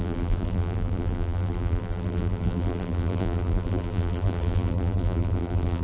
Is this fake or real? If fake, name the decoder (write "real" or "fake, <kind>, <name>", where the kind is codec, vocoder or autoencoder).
fake, vocoder, BigVGAN v2